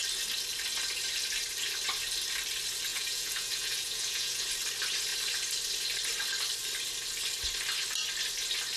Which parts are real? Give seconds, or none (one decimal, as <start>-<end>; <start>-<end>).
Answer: 0.0-2.9; 4.5-8.8